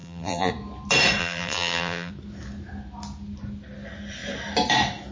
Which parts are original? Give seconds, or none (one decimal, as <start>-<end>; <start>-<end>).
0.5-1.2; 2.1-5.1

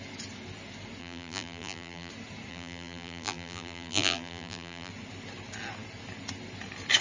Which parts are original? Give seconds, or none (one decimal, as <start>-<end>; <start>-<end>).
0.0-1.0; 2.1-2.5; 4.9-7.0

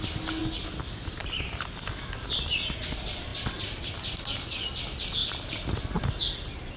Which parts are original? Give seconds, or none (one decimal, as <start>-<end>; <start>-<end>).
0.0-3.3; 3.9-5.2; 6.0-6.8

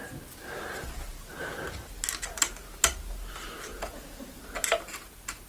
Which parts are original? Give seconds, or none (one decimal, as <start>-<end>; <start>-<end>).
0.0-3.7; 4.4-5.5

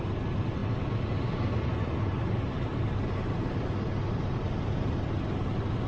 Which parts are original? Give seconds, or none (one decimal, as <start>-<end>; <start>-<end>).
0.0-5.9